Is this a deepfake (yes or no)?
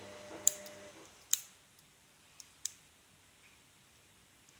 yes